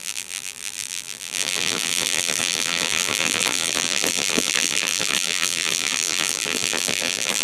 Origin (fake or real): fake